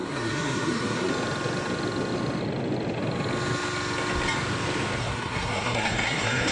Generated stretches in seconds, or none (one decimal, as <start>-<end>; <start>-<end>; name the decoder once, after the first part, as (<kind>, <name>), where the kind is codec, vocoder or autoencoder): 0.0-1.1 (codec, SNAC); 5.0-6.5